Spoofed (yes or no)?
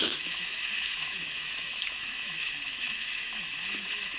yes